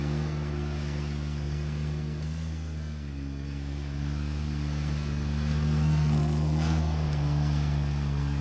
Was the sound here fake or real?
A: fake